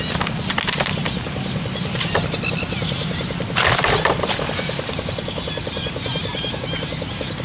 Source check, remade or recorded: recorded